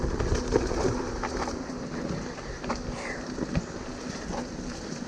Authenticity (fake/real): real